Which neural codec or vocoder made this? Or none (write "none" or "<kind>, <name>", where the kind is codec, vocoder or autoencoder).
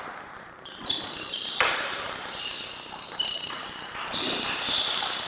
vocoder, BigVGAN v2